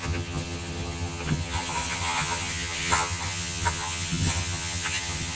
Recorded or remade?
remade